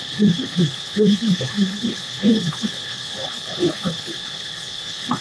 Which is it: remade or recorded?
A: remade